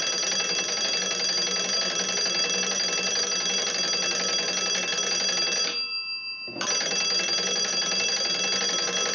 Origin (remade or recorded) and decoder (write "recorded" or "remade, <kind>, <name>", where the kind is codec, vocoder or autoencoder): recorded